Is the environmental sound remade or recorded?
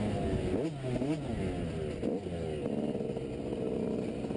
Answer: recorded